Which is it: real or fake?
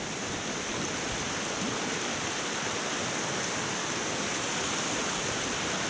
real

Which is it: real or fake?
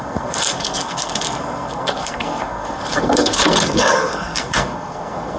fake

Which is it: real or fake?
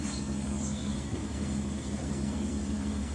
fake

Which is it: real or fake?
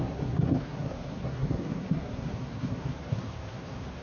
fake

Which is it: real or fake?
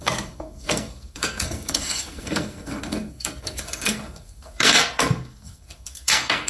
fake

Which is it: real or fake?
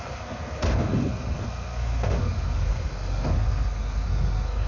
fake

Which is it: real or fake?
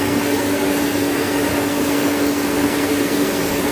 fake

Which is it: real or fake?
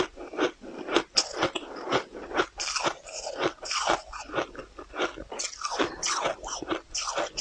real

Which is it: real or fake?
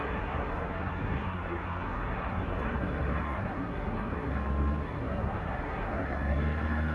fake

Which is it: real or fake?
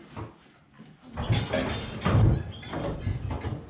real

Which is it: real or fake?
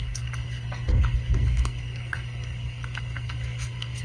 fake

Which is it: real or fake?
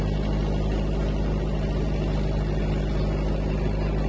real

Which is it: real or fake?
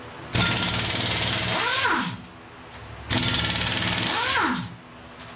real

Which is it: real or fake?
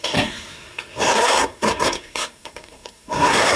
fake